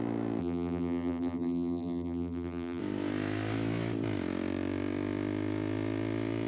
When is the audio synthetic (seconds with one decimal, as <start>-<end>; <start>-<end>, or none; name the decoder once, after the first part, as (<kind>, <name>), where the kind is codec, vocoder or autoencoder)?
0.4-2.8 (vocoder, BigVGAN v2)

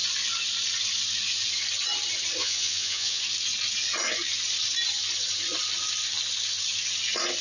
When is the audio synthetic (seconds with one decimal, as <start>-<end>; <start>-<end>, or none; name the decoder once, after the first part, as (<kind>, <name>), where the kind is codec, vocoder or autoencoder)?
2.4-3.2 (vocoder, Vocos)

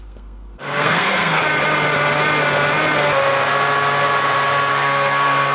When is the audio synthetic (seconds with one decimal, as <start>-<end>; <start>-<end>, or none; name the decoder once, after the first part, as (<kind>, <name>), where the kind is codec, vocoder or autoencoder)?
0.0-1.4 (codec, SNAC); 4.7-5.5

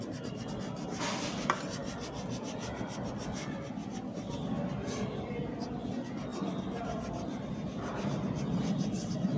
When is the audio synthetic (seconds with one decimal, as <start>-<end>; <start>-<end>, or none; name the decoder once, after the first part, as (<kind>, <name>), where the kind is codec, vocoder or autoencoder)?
none